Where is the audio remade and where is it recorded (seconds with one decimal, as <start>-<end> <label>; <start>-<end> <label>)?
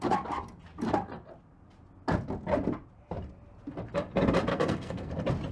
0.0-4.5 recorded; 4.5-5.1 remade; 5.1-5.5 recorded